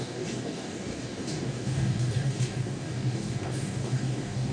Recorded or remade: remade